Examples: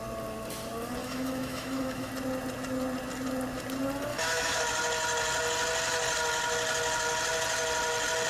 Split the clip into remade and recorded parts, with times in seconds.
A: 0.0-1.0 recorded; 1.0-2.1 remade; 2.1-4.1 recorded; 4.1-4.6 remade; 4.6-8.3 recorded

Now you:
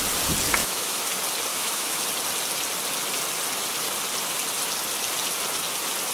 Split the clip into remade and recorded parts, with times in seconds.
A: 0.0-0.6 recorded; 0.6-1.1 remade; 1.1-1.5 recorded; 1.5-2.0 remade; 2.0-6.1 recorded

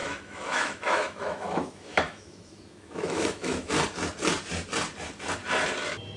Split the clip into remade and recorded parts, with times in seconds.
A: 0.0-3.7 remade; 3.7-6.2 recorded

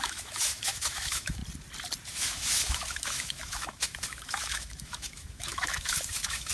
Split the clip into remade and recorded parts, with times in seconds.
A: 0.0-1.4 remade; 1.4-2.1 recorded; 2.1-6.5 remade

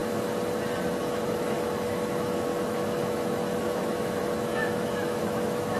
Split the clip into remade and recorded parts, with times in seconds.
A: 0.0-1.0 recorded; 1.0-5.8 remade

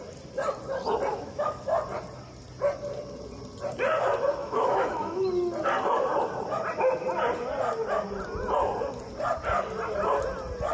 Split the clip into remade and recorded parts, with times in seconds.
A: 0.0-1.1 recorded; 1.1-1.7 remade; 1.7-4.4 recorded; 4.4-5.3 remade; 5.3-10.7 recorded

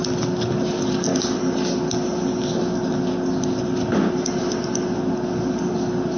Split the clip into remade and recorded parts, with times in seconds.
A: 0.0-6.2 recorded

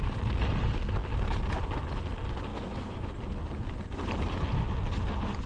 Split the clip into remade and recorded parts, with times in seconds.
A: 0.0-2.5 recorded; 2.5-3.1 remade; 3.1-5.5 recorded